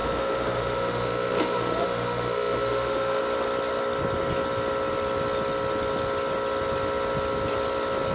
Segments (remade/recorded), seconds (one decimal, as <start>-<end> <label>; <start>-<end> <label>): 0.0-3.2 remade; 3.2-8.1 recorded